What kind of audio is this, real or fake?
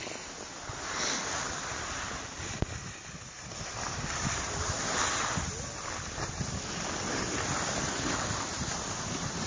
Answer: real